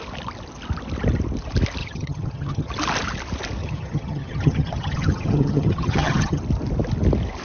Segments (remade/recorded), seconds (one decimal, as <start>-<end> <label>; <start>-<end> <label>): 0.0-1.8 recorded; 1.8-2.7 remade; 2.7-3.6 recorded; 3.6-6.4 remade; 6.4-7.4 recorded